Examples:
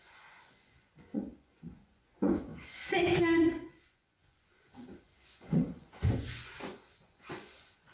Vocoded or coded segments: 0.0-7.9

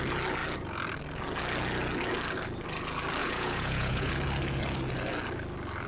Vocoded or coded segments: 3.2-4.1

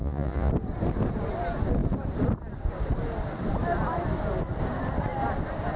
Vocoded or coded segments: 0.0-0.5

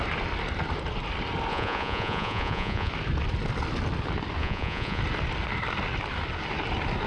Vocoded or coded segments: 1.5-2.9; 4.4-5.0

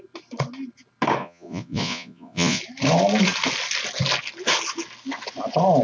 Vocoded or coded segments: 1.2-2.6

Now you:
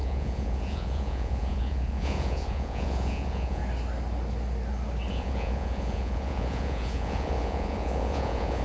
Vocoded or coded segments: 0.0-3.6; 5.1-8.6